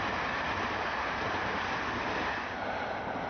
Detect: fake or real real